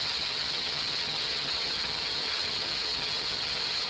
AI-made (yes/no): yes